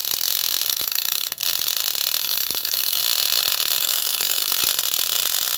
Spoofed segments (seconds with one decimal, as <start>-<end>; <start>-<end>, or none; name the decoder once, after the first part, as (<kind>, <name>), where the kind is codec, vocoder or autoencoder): 0.7-1.4 (codec, SNAC); 2.2-3.0; 3.8-4.6